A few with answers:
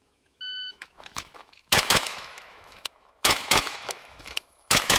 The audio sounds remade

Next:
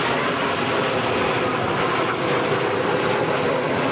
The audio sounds recorded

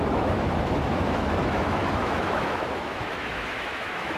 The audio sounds remade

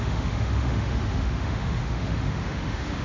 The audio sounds remade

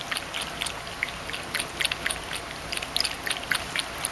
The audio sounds recorded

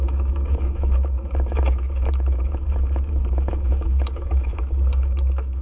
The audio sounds remade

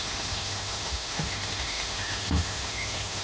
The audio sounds remade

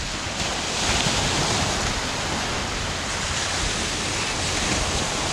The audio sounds recorded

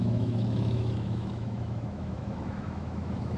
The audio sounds remade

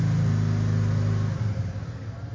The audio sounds recorded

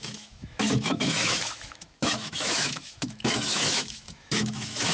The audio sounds remade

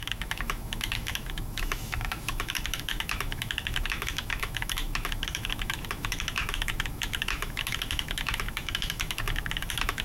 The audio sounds remade